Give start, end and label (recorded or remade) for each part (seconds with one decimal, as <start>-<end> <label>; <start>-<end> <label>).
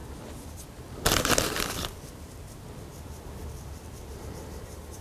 0.0-3.0 recorded; 3.0-3.4 remade; 3.4-4.1 recorded; 4.1-5.0 remade